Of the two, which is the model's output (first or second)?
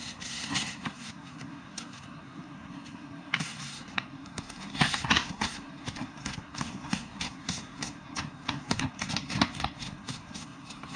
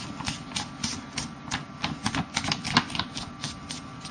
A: first